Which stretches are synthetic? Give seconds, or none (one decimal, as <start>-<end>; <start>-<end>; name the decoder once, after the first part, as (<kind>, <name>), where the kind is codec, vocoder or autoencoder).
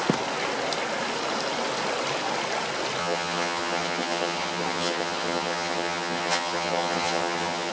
3.0-7.7 (vocoder, HiFi-GAN)